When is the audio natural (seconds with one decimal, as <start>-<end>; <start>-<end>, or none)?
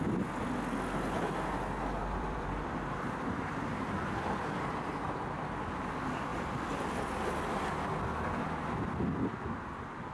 0.0-2.0; 5.6-6.3; 7.1-10.1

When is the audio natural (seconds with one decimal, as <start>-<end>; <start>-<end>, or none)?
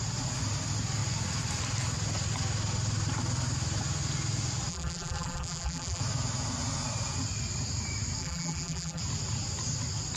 0.0-4.7; 6.0-8.2; 9.0-10.2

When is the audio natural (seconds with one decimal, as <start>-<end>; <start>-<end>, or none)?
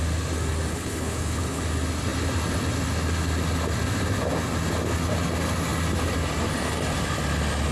0.0-0.7; 1.6-7.7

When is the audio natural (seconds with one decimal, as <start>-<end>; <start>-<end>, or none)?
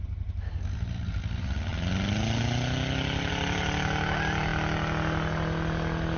0.0-6.2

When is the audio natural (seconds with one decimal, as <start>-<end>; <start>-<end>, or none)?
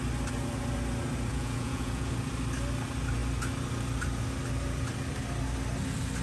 0.0-1.3; 2.1-6.2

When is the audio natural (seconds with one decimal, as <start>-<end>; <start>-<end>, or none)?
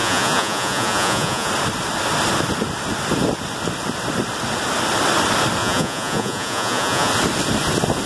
1.5-5.6; 7.1-8.1